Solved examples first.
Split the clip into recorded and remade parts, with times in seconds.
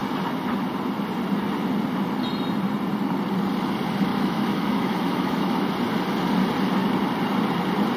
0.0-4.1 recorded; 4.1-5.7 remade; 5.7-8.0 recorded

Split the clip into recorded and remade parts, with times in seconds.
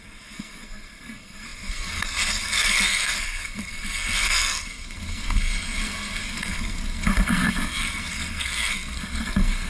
0.0-9.7 remade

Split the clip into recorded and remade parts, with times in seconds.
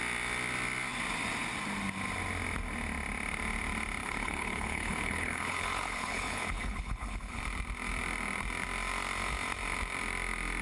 0.0-4.0 recorded; 4.0-7.4 remade; 7.4-10.6 recorded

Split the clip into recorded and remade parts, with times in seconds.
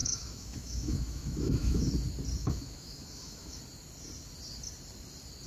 0.0-1.8 remade; 1.8-2.4 recorded; 2.4-3.6 remade; 3.6-5.5 recorded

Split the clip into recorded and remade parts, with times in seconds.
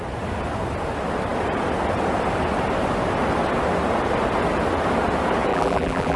0.0-5.5 recorded; 5.5-6.2 remade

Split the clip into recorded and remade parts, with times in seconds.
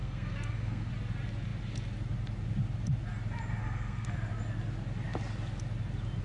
0.0-0.9 remade; 0.9-3.6 recorded; 3.6-4.1 remade; 4.1-6.2 recorded